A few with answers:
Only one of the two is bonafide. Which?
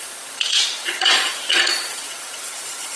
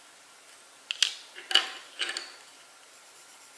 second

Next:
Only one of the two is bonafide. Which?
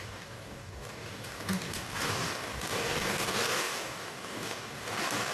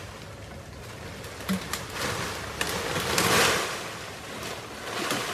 second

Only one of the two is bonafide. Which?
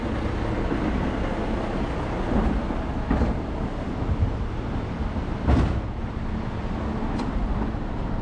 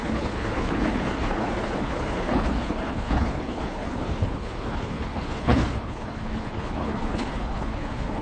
first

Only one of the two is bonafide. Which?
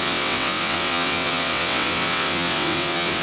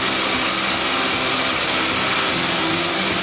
second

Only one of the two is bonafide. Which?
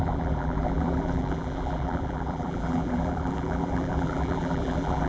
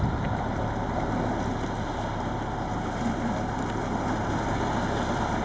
second